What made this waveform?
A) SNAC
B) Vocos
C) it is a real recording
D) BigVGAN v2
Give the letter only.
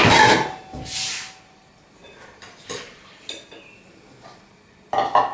C